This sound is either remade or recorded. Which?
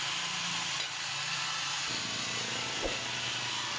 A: recorded